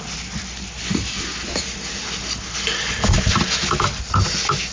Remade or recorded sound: recorded